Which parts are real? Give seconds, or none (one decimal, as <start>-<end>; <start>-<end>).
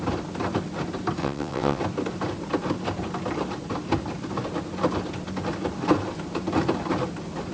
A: 0.0-1.2; 1.8-7.5